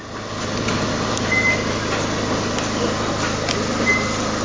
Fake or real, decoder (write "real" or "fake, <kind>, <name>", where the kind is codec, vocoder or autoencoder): real